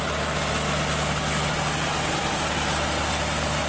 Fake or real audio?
real